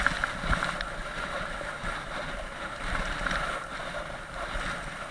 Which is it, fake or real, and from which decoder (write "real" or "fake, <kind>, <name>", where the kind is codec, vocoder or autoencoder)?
real